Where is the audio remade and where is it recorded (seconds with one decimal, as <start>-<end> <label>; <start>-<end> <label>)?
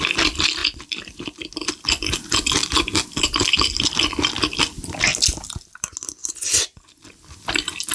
0.0-7.9 recorded